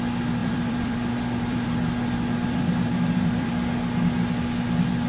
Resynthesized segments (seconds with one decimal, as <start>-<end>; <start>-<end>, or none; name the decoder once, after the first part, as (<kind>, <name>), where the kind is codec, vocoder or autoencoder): 0.4-3.5 (vocoder, BigVGAN v2)